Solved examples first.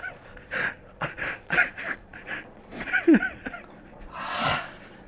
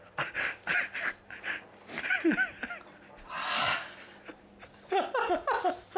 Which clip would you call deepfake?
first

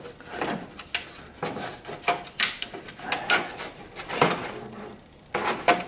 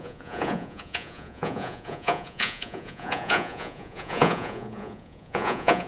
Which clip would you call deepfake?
second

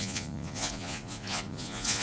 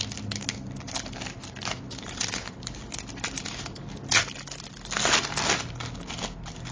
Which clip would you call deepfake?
first